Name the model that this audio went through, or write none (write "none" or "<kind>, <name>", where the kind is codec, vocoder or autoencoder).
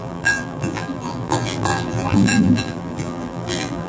vocoder, BigVGAN v2